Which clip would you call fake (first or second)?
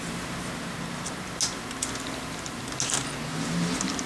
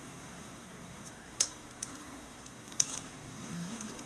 second